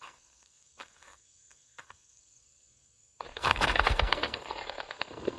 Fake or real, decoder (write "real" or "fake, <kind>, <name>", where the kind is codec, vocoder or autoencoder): fake, codec, SNAC